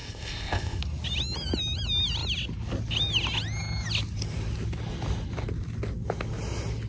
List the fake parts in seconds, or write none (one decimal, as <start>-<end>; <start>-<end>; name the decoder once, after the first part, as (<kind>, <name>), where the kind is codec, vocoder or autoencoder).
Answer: 0.0-0.8 (codec, ZipCodec)